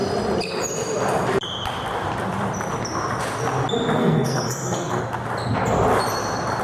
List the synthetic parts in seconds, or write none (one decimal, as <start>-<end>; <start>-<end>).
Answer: 4.0-5.0